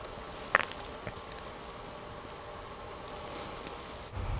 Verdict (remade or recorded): recorded